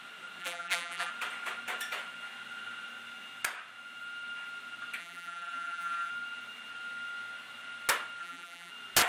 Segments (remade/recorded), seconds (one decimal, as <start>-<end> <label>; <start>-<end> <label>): 0.0-0.4 recorded; 0.4-1.1 remade; 1.1-5.0 recorded; 5.0-6.1 remade; 6.1-8.2 recorded; 8.2-8.7 remade; 8.7-9.1 recorded